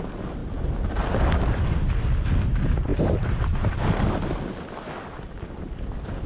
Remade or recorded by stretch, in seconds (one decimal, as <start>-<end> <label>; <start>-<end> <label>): 0.0-6.3 recorded